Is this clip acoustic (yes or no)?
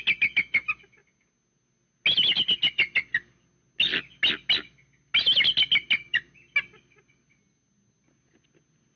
yes